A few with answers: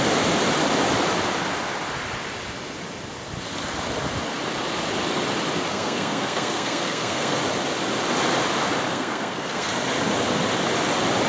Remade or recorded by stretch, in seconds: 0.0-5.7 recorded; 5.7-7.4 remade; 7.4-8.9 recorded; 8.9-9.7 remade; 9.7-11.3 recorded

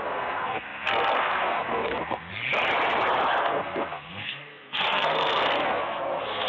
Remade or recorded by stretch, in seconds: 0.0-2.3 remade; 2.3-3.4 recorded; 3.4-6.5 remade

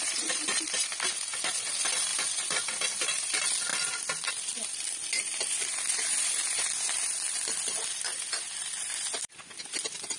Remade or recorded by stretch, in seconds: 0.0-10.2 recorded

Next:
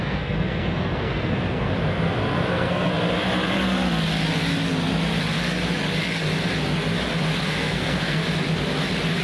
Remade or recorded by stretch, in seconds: 0.0-1.7 remade; 1.7-2.5 recorded; 2.5-2.9 remade; 2.9-7.4 recorded; 7.4-8.2 remade; 8.2-9.2 recorded